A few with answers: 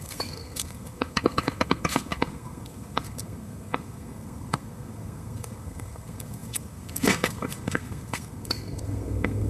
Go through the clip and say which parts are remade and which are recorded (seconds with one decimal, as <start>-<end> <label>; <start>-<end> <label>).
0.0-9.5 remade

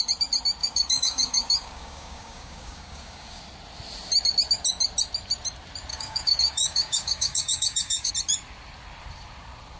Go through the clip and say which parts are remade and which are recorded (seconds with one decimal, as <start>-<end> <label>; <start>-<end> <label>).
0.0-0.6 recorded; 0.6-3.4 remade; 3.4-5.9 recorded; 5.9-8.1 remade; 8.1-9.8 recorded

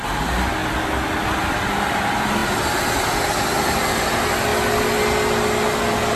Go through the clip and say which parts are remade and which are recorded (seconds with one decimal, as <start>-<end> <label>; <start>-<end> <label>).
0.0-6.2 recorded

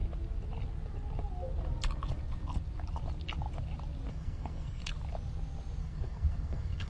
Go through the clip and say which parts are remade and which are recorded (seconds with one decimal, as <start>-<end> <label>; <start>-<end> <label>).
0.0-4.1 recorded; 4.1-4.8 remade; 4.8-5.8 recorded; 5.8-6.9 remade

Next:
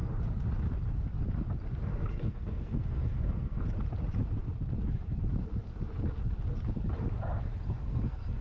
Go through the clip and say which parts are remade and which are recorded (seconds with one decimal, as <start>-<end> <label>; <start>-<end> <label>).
0.0-1.9 recorded; 1.9-3.6 remade; 3.6-7.8 recorded; 7.8-8.4 remade

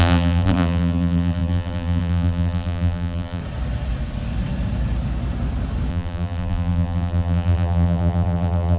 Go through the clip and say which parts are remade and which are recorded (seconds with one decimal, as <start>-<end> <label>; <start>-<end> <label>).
0.0-3.4 remade; 3.4-5.9 recorded; 5.9-8.8 remade